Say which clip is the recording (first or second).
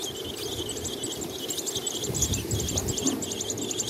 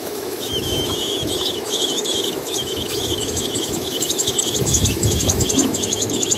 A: first